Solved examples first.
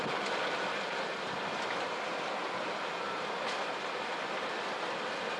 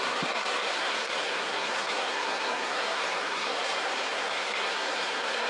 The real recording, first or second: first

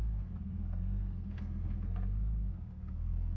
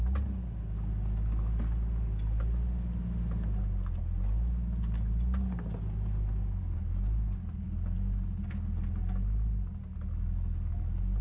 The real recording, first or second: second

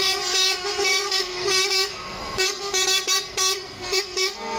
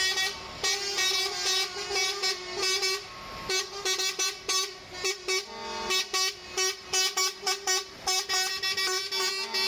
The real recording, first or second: second